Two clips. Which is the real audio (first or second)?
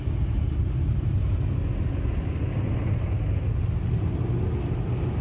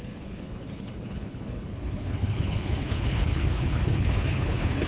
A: first